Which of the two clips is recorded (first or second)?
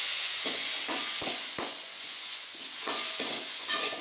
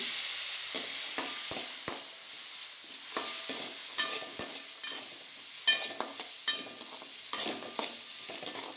second